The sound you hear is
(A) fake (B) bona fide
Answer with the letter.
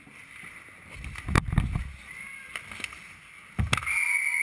B